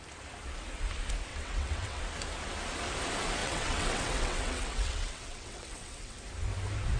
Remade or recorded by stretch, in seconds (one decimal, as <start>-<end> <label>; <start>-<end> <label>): 0.0-1.3 recorded; 1.3-2.0 remade; 2.0-3.4 recorded; 3.4-6.2 remade; 6.2-7.0 recorded